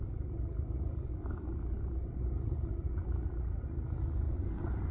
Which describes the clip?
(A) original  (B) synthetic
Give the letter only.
A